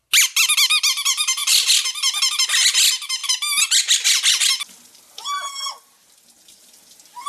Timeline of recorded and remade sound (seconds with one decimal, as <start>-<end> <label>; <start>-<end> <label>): 0.0-7.3 recorded